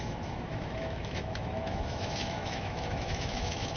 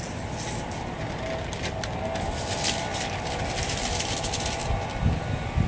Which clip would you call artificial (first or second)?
first